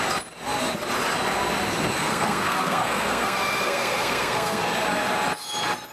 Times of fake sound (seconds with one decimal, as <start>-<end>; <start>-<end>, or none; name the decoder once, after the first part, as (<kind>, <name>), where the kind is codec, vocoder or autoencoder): 2.0-4.6 (codec, SNAC)